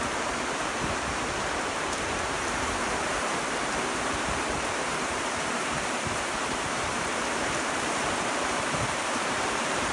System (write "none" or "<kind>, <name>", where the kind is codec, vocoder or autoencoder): vocoder, BigVGAN v2